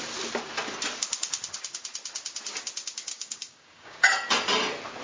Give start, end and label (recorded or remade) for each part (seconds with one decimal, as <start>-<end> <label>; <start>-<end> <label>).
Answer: 0.0-3.1 recorded; 3.1-4.0 remade; 4.0-5.0 recorded